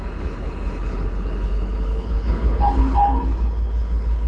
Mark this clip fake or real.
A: fake